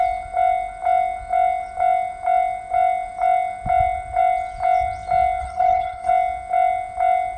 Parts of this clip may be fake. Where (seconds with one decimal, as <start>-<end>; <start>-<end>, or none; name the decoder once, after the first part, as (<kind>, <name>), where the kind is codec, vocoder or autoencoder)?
5.4-6.1 (codec, HILCodec)